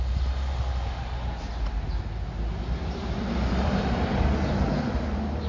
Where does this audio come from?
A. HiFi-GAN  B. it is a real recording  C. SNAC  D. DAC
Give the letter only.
B